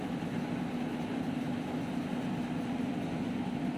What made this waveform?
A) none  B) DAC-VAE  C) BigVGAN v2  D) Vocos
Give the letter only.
A